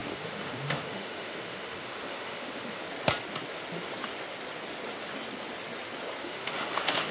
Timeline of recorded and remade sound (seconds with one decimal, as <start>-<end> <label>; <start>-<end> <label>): 0.0-2.8 remade; 2.8-6.2 recorded; 6.2-7.1 remade